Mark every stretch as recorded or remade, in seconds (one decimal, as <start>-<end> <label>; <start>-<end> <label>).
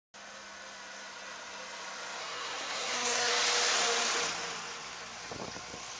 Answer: 0.0-2.2 recorded; 2.2-3.3 remade; 3.3-6.0 recorded